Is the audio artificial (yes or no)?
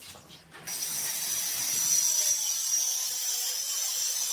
no